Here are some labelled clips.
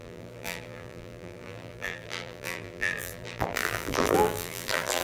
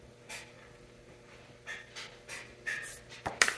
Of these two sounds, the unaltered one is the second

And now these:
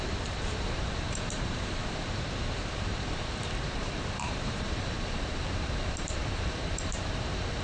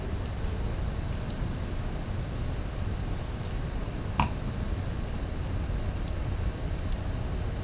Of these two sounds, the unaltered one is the second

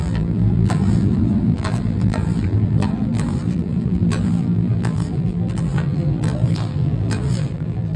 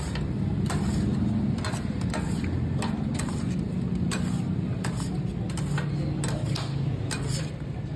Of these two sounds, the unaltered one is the second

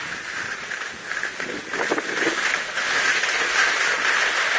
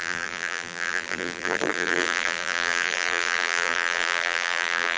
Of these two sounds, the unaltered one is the first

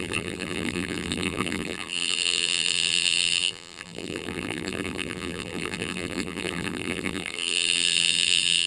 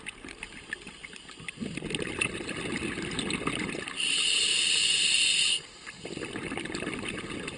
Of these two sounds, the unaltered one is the second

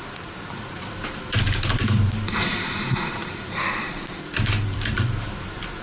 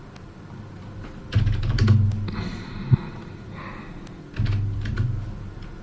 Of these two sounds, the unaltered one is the second